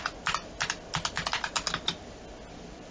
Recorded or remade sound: recorded